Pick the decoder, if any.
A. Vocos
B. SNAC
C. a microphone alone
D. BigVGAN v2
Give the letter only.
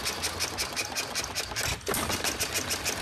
C